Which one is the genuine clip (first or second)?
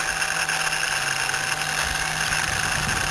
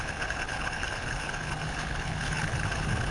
first